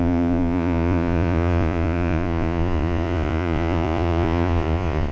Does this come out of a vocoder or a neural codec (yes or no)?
yes